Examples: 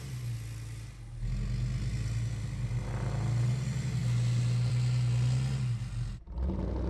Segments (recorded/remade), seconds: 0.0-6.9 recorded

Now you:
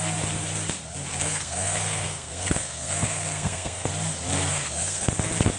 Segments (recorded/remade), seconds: 0.0-1.1 recorded; 1.1-3.9 remade; 3.9-4.5 recorded; 4.5-5.1 remade; 5.1-5.6 recorded

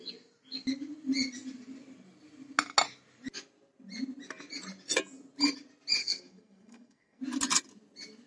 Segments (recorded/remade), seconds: 0.0-6.0 recorded; 6.0-7.2 remade; 7.2-8.3 recorded

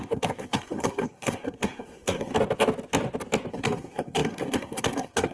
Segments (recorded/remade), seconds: 0.0-2.3 remade; 2.3-3.5 recorded; 3.5-5.3 remade

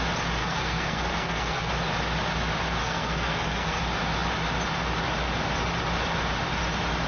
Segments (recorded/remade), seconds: 0.0-0.4 recorded; 0.4-1.7 remade; 1.7-2.8 recorded; 2.8-3.8 remade; 3.8-7.1 recorded

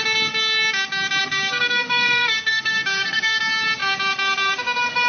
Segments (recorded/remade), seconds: 0.0-1.2 recorded; 1.2-3.4 remade; 3.4-5.1 recorded

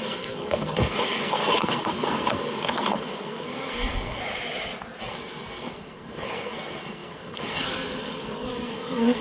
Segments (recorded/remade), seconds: 0.0-4.2 remade; 4.2-5.0 recorded; 5.0-9.2 remade